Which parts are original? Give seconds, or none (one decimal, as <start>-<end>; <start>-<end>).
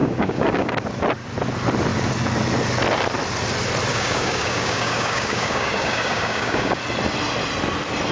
0.8-3.9; 6.8-8.1